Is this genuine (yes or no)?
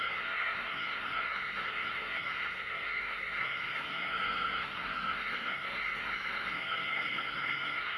no